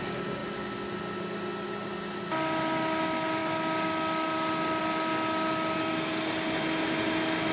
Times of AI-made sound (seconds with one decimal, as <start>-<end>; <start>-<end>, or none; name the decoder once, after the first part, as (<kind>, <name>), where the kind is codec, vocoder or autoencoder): none